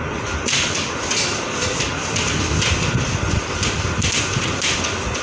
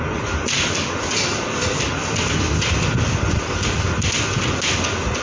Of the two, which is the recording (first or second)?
second